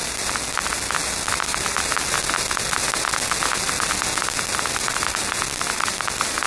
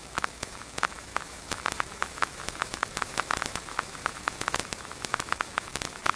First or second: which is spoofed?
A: second